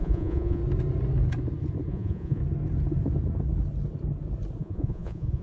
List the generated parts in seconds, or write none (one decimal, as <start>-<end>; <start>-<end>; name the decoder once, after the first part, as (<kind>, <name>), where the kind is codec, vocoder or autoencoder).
0.0-0.6 (vocoder, Vocos); 1.9-2.4; 4.6-5.4